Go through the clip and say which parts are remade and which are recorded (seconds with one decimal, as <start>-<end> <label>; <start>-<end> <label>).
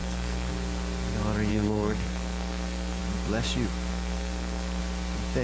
0.0-0.5 remade; 0.5-1.5 recorded; 1.5-3.0 remade; 3.0-3.9 recorded; 3.9-4.8 remade; 4.8-5.4 recorded